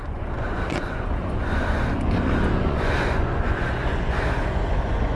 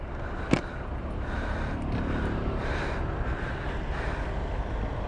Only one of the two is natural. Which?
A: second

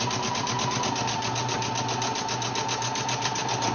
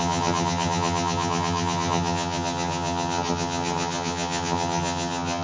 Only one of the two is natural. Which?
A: first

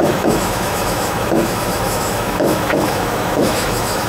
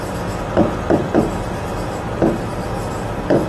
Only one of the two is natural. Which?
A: second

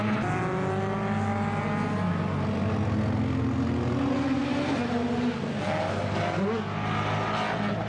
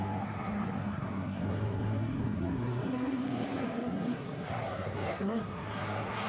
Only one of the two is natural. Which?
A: first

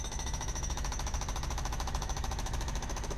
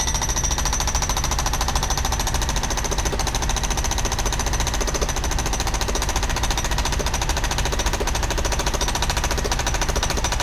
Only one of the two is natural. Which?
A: second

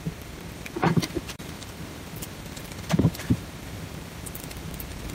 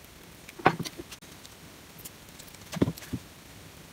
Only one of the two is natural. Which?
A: second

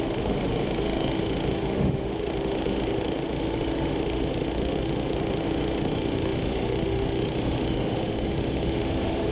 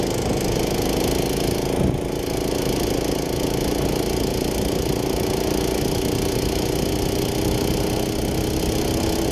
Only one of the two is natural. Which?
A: second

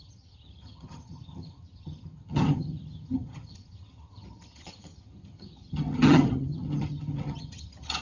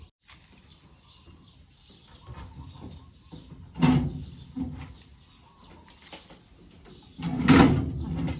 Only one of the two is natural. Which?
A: second